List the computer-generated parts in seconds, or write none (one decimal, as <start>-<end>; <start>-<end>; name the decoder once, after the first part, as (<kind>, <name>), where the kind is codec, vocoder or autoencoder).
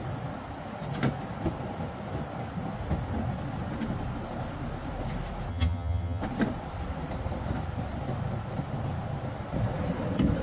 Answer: 5.5-6.2 (vocoder, HiFi-GAN)